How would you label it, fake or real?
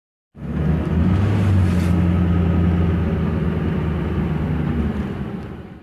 real